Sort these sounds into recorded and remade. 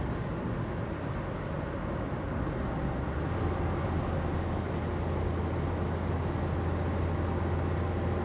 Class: recorded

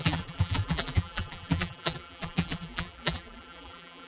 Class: remade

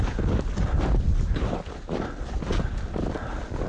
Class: recorded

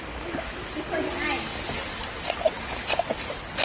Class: recorded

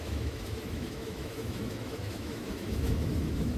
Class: remade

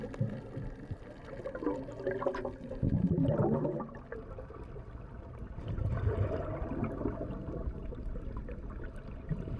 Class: recorded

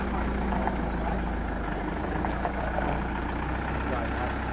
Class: recorded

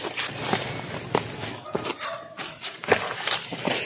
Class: recorded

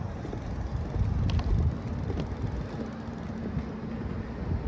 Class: recorded